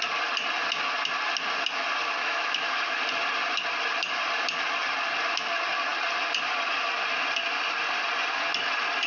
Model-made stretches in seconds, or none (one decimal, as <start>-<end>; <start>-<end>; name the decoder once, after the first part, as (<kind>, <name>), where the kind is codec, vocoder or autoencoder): 2.2-3.0 (autoencoder, DAC-VAE)